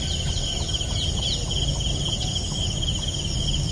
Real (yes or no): yes